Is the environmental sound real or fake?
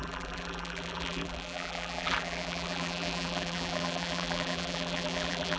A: fake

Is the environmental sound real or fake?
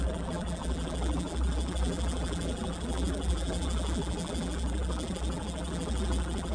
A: fake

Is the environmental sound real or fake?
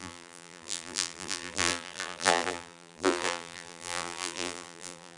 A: fake